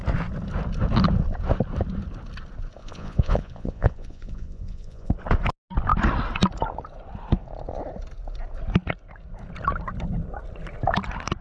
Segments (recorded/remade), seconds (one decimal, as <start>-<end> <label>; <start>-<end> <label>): 0.0-2.8 recorded; 2.8-5.1 remade; 5.1-11.4 recorded